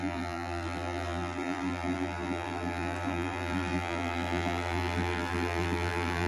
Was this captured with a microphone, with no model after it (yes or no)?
no